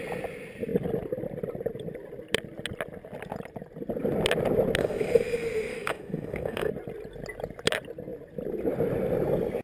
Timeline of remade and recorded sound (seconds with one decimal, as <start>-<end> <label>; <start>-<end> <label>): 0.0-4.8 recorded; 4.8-6.7 remade; 6.7-9.6 recorded